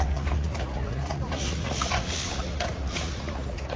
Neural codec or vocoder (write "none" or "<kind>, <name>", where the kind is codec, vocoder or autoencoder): vocoder, Vocos